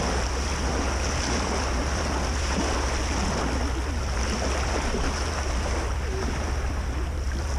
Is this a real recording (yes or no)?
yes